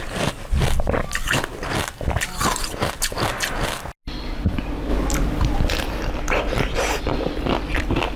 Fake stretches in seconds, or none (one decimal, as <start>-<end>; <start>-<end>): none